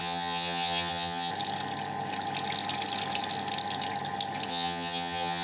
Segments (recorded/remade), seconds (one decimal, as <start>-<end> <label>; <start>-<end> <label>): 0.0-1.3 remade; 1.3-4.5 recorded; 4.5-5.4 remade